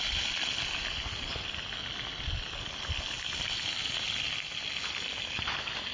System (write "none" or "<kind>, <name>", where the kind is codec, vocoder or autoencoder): none